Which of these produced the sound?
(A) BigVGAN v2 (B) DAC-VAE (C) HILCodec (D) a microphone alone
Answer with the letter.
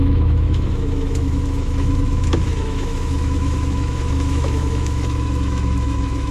B